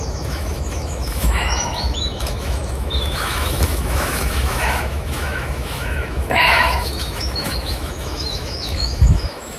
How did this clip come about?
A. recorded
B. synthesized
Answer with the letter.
B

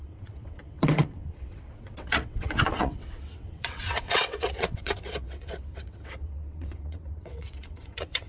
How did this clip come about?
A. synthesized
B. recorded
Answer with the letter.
A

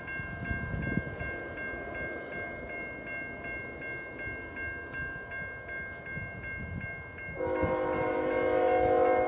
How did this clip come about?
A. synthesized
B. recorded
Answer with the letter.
B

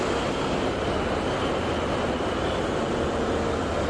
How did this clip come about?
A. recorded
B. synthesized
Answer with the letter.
A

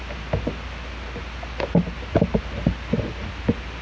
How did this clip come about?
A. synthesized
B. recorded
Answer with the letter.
B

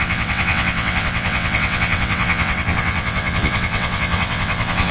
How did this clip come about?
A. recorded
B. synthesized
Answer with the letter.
B